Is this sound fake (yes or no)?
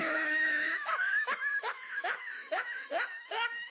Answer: yes